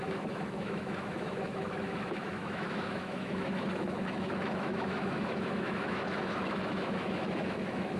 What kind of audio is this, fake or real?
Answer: fake